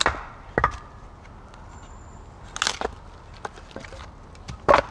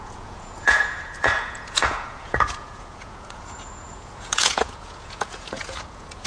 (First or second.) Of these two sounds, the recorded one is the first